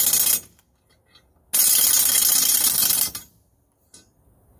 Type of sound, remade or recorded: recorded